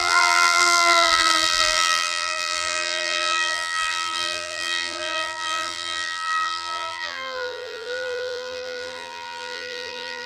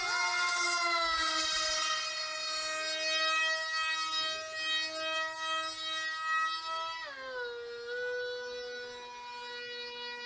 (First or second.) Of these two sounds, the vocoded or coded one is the first